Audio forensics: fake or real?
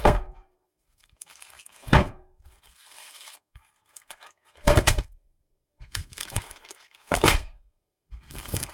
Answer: fake